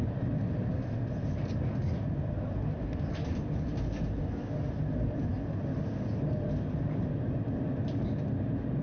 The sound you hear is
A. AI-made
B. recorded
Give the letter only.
B